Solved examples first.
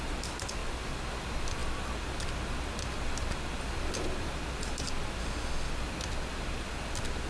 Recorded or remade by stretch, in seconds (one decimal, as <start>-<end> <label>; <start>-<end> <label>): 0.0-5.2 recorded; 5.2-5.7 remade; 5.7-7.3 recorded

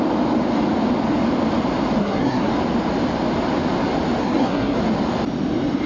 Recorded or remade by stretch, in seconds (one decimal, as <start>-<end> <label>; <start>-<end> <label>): 0.0-2.0 recorded; 2.0-2.5 remade; 2.5-4.2 recorded; 4.2-4.8 remade; 4.8-5.9 recorded

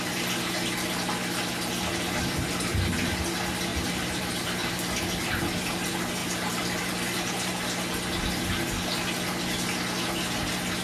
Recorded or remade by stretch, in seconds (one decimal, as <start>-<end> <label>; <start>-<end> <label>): 0.0-3.7 recorded; 3.7-5.0 remade; 5.0-6.2 recorded; 6.2-7.5 remade; 7.5-10.8 recorded